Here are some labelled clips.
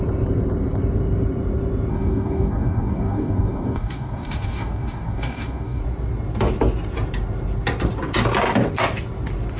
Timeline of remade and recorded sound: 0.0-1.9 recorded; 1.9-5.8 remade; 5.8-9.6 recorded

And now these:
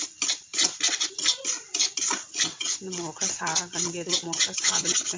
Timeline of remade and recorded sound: 0.0-2.5 recorded; 2.5-4.7 remade; 4.7-5.2 recorded

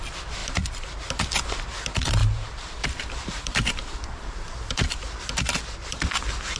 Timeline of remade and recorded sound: 0.0-0.4 recorded; 0.4-1.1 remade; 1.1-2.2 recorded; 2.2-4.9 remade; 4.9-6.6 recorded